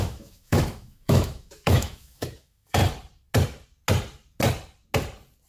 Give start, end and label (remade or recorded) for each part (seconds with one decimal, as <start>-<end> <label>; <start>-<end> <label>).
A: 0.0-2.8 remade; 2.8-5.5 recorded